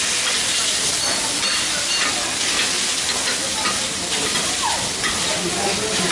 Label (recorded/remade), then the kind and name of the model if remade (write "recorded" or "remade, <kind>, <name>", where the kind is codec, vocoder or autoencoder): recorded